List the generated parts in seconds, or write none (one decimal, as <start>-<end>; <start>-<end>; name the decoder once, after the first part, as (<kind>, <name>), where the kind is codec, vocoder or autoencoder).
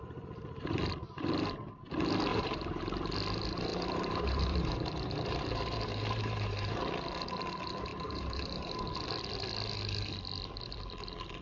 2.3-2.8 (vocoder, BigVGAN v2); 3.7-6.9; 7.9-8.7